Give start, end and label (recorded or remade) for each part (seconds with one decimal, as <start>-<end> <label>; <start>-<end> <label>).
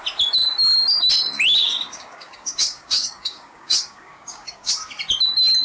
0.0-1.6 recorded; 1.6-4.7 remade; 4.7-5.6 recorded